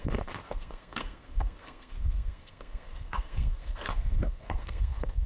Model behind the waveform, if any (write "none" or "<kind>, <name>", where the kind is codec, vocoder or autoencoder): codec, SNAC